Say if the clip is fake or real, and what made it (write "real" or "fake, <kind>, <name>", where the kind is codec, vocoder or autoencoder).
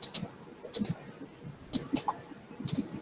real